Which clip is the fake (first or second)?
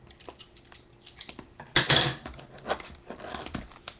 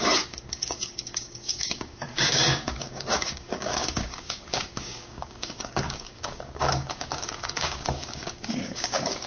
second